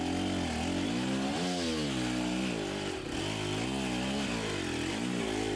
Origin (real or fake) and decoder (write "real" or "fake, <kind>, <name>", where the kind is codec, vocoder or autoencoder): real